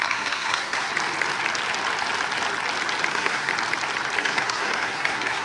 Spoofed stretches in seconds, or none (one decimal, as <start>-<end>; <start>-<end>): 0.0-0.9; 3.1-3.5; 4.2-5.4